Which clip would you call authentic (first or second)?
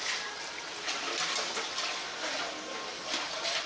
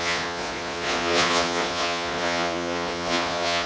first